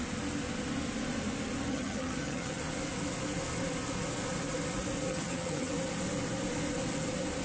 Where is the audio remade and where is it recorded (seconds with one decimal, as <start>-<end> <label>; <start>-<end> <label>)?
0.0-1.7 recorded; 1.7-2.6 remade; 2.6-5.1 recorded; 5.1-5.7 remade; 5.7-7.4 recorded